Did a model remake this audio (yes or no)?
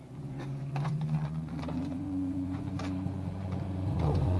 yes